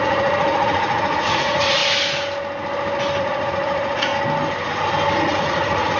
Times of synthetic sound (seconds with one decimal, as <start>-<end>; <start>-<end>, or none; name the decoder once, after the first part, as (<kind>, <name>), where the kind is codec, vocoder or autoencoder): 0.0-1.8 (vocoder, Vocos); 3.2-4.1; 5.2-6.0